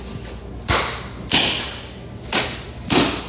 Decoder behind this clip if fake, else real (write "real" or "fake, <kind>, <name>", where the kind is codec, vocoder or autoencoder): real